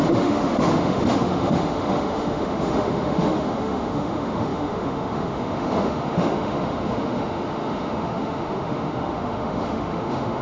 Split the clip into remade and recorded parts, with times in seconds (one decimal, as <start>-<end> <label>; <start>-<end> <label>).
0.0-10.4 remade